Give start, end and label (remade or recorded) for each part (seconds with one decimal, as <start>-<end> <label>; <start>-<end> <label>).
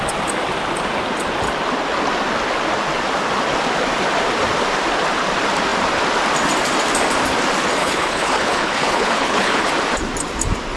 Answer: 0.0-7.8 recorded; 7.8-9.7 remade; 9.7-10.8 recorded